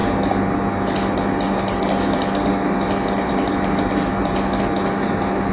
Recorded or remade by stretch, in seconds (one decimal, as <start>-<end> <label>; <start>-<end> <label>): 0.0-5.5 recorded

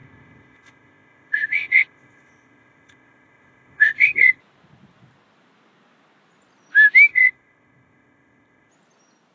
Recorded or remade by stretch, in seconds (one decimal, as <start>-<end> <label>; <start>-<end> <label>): 0.0-4.4 remade; 4.4-7.1 recorded; 7.1-8.7 remade; 8.7-9.3 recorded

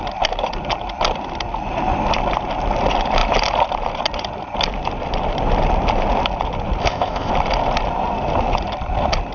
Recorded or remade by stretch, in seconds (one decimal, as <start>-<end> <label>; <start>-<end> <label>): 0.0-6.8 recorded; 6.8-7.3 remade; 7.3-9.3 recorded